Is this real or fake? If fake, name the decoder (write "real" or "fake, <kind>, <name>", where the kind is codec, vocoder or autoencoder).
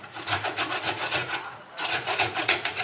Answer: fake, vocoder, Vocos